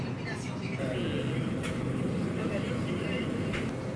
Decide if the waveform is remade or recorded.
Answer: recorded